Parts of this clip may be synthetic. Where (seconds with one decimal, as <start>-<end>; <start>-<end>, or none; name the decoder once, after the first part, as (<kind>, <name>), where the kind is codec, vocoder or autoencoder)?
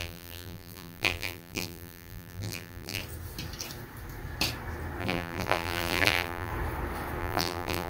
0.0-3.0 (vocoder, BigVGAN v2); 5.0-6.5; 7.2-7.9